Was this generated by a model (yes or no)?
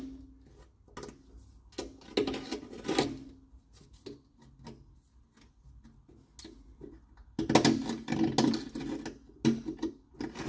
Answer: no